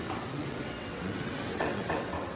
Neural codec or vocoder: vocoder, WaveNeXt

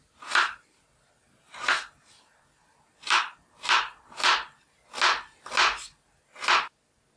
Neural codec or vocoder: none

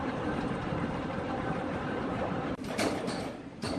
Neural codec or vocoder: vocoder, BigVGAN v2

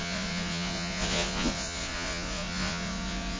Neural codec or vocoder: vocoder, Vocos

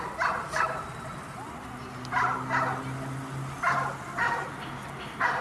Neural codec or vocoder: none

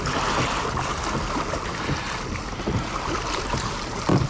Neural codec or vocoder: none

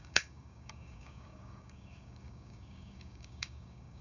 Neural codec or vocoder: codec, DAC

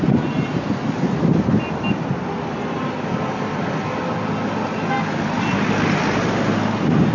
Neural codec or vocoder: none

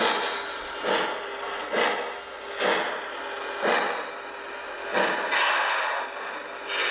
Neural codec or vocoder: none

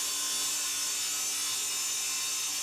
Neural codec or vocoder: none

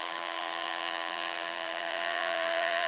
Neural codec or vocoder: vocoder, BigVGAN v2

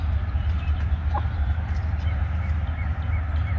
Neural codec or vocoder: none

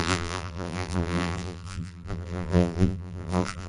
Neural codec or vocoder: vocoder, BigVGAN v2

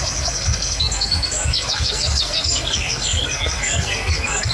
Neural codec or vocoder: codec, SNAC